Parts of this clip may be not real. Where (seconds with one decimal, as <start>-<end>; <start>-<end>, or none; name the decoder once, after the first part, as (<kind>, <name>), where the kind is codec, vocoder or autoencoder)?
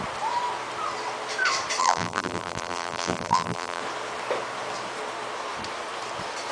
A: 1.8-3.8 (vocoder, BigVGAN v2)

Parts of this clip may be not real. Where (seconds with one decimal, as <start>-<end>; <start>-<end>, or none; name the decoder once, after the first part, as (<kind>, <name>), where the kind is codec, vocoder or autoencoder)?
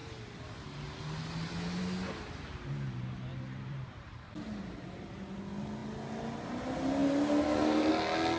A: 3.3-4.4 (vocoder, BigVGAN v2); 7.0-7.9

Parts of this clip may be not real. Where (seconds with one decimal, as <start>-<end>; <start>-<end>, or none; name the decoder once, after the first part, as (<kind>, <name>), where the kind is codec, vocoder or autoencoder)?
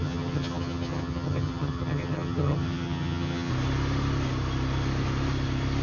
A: 0.0-3.5 (vocoder, HiFi-GAN)